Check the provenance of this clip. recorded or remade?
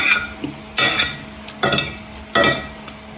recorded